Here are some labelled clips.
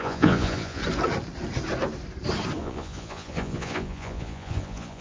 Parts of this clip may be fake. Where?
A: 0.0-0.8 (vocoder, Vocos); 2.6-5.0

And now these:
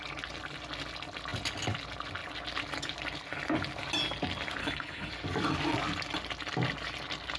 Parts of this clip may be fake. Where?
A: 4.6-5.1 (codec, HILCodec)

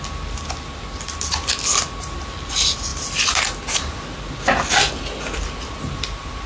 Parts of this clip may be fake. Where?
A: none

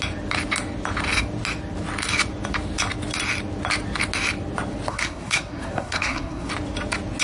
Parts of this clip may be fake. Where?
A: 4.9-6.5 (codec, SNAC)

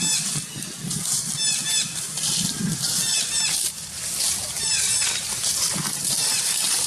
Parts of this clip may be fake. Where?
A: none

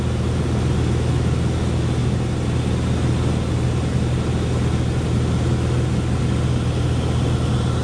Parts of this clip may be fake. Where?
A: none

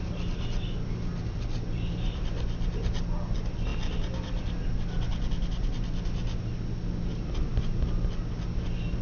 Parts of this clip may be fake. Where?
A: none

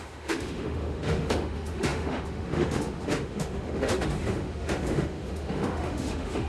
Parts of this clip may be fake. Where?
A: 0.0-6.5 (autoencoder, DAC-VAE)